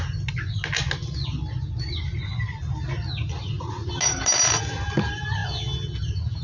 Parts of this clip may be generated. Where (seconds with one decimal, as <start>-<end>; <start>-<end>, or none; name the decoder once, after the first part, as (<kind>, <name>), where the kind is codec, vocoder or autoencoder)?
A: 3.4-3.9 (vocoder, Vocos)